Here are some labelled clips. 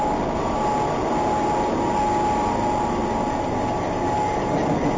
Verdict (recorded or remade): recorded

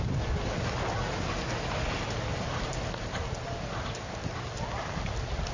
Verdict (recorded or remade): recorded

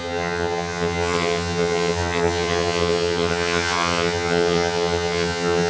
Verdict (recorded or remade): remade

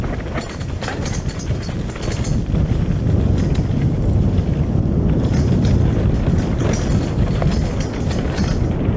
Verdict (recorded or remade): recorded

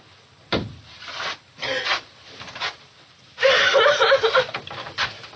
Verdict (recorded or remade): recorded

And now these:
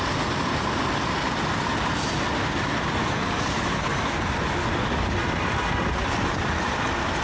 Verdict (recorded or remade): recorded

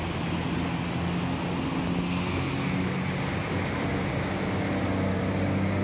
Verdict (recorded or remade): recorded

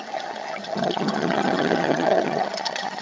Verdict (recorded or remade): remade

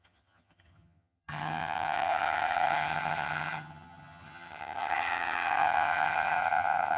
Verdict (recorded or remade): remade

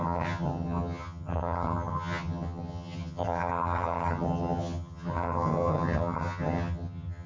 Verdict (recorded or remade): remade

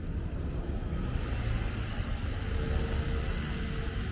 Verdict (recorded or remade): recorded